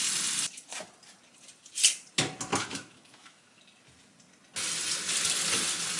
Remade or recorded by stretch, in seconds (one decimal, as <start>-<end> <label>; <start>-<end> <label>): 0.0-2.5 recorded; 2.5-3.6 remade; 3.6-6.0 recorded